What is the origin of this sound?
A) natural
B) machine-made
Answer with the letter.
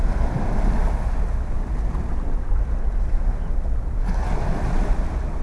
A